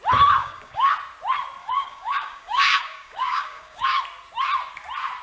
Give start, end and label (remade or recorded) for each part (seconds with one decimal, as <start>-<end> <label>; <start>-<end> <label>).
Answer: 0.0-0.4 recorded; 0.4-0.9 remade; 0.9-1.6 recorded; 1.6-4.0 remade; 4.0-5.2 recorded